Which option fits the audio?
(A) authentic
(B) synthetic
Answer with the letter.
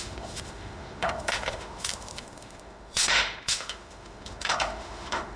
B